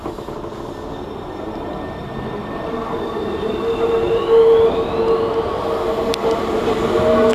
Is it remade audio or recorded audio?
recorded